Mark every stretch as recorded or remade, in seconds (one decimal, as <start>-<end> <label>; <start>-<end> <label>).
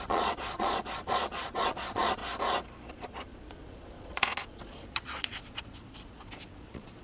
0.0-2.2 remade; 2.2-2.9 recorded; 2.9-7.0 remade